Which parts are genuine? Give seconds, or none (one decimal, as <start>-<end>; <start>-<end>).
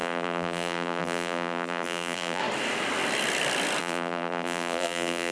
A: 2.4-3.8